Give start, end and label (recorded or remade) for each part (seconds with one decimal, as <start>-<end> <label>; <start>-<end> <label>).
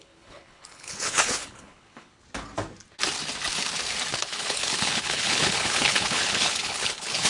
0.0-2.2 remade; 2.2-4.1 recorded; 4.1-7.3 remade